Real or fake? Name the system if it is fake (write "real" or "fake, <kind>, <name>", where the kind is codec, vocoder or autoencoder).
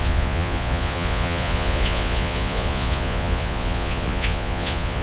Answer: fake, vocoder, Vocos